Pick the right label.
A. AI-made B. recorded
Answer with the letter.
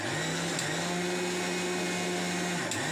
B